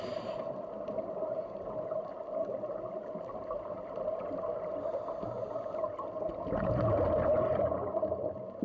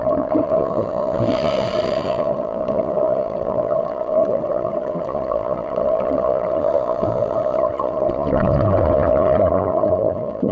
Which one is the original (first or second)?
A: first